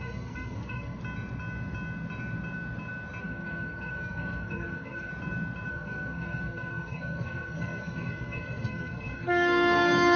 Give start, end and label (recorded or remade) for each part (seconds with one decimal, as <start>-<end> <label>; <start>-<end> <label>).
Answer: 0.0-1.0 remade; 1.0-3.2 recorded; 3.2-5.1 remade; 5.1-5.7 recorded; 5.7-10.2 remade